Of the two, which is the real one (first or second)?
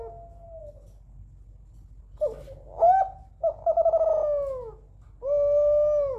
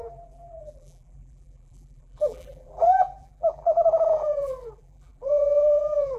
first